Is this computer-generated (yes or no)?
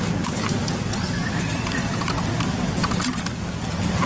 no